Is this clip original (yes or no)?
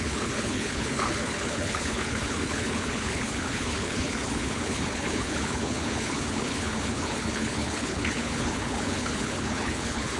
no